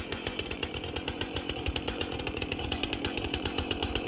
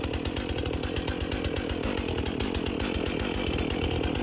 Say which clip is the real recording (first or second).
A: second